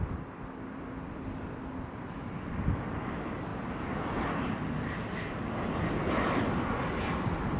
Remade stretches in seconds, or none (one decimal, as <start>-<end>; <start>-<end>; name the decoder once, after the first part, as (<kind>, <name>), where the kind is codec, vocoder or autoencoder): none